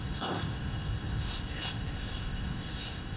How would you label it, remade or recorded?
remade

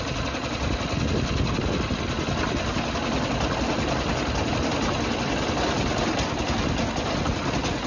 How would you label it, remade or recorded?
recorded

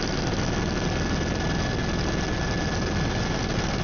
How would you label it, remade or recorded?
recorded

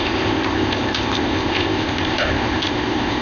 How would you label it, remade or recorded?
remade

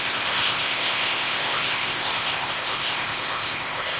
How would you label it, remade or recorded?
remade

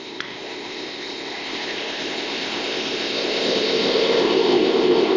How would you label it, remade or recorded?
remade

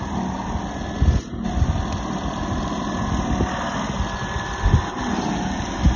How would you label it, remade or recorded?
recorded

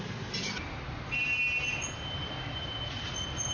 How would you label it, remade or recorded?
recorded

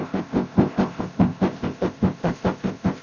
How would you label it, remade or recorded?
remade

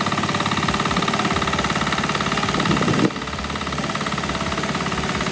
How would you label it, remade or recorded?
recorded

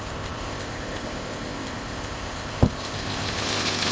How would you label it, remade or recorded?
remade